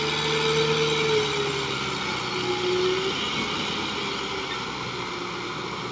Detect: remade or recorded recorded